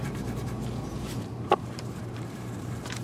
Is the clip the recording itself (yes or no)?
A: no